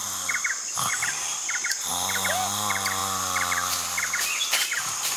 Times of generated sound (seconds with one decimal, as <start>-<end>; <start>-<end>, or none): none